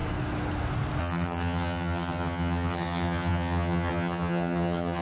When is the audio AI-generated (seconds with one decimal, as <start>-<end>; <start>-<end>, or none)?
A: 1.0-5.0